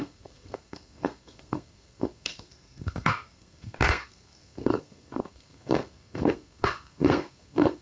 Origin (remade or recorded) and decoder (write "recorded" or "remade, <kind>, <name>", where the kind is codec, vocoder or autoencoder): remade, codec, SNAC